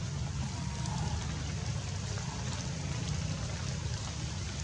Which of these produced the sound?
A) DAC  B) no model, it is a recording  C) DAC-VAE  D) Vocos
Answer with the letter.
B